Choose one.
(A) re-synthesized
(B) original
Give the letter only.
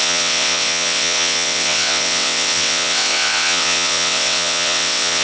A